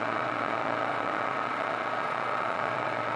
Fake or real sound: fake